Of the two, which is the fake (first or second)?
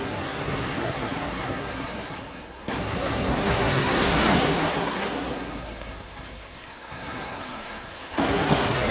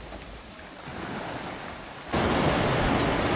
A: first